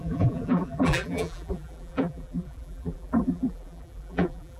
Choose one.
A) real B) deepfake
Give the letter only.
B